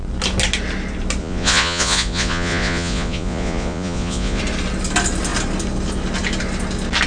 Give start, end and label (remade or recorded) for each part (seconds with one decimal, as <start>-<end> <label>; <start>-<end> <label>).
0.0-1.2 recorded; 1.2-4.4 remade; 4.4-7.1 recorded